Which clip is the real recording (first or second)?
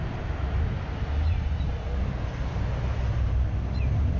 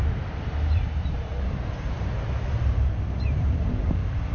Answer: first